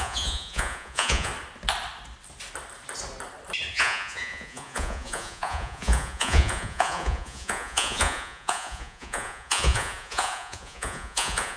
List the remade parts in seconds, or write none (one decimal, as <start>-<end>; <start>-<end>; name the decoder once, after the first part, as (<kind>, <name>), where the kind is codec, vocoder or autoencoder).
0.0-1.3 (vocoder, Vocos); 3.7-11.6